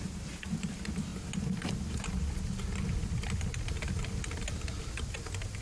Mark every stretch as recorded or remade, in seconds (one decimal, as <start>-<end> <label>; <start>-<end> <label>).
0.0-1.1 remade; 1.1-4.5 recorded; 4.5-5.6 remade